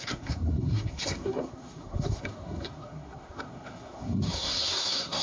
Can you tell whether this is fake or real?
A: fake